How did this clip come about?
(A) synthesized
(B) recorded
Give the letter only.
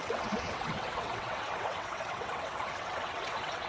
A